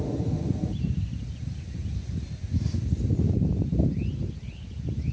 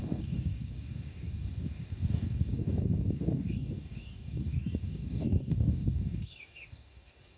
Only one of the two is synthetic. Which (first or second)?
second